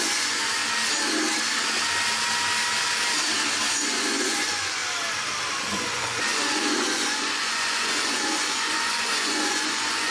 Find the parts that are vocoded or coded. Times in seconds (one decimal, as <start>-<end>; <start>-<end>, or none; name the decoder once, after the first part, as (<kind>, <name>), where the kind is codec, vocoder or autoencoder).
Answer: 0.0-0.6 (vocoder, Vocos); 3.7-4.8; 5.5-10.1